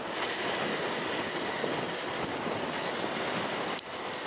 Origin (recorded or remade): recorded